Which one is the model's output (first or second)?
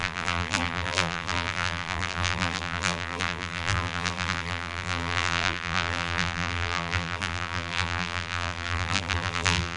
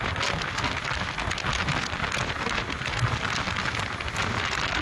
first